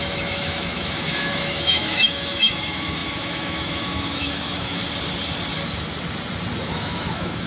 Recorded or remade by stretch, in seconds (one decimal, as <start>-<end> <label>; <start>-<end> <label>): 0.0-4.8 remade; 4.8-6.6 recorded; 6.6-7.5 remade